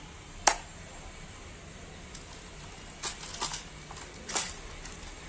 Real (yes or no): yes